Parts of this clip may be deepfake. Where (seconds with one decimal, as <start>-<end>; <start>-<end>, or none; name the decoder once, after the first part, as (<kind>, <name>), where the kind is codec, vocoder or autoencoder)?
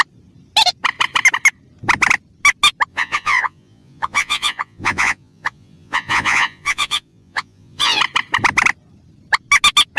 2.9-8.0 (vocoder, Vocos)